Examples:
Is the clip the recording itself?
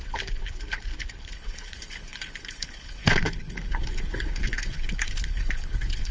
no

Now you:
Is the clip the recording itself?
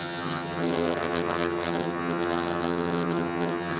no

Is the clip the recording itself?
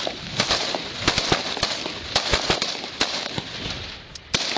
yes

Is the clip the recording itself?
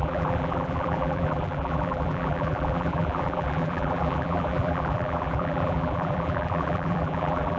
no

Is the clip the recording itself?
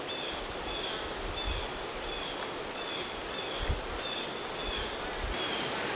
yes